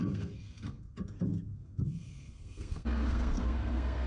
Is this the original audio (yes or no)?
no